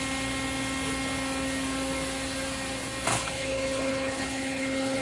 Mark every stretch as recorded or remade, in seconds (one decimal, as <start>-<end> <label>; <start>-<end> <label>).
0.0-3.1 recorded; 3.1-5.0 remade